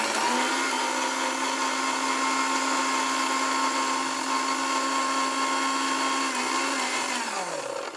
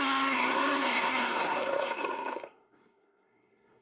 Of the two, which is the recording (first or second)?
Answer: first